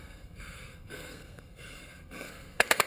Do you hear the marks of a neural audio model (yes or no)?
yes